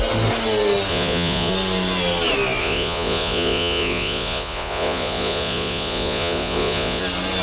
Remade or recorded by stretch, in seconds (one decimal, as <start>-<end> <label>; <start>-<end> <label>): 0.0-0.9 recorded; 0.9-1.5 remade; 1.5-2.6 recorded; 2.6-7.0 remade; 7.0-7.4 recorded